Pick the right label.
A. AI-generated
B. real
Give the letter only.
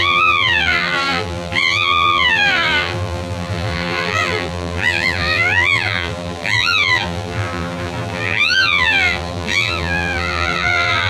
A